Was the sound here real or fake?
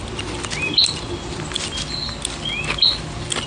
real